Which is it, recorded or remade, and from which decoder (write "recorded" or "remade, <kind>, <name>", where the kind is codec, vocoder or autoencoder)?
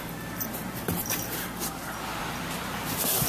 recorded